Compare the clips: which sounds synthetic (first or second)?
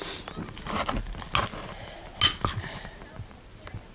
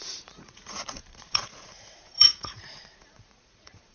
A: second